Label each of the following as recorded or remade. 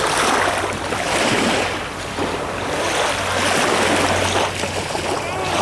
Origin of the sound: recorded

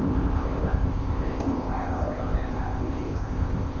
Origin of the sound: remade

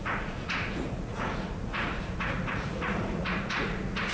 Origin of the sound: remade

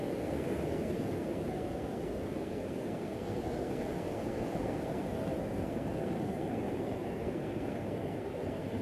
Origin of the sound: remade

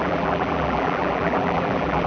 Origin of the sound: remade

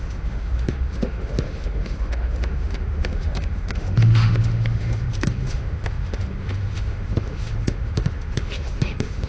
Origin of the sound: remade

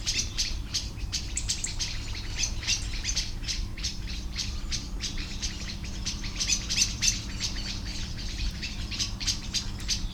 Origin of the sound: remade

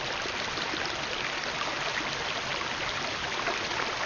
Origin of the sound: recorded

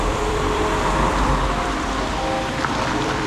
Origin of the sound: remade